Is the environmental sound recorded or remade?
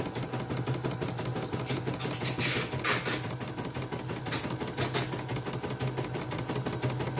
recorded